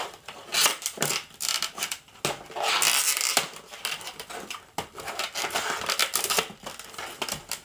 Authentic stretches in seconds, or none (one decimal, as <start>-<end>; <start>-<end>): 0.0-7.6